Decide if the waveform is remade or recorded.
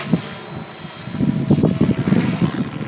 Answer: recorded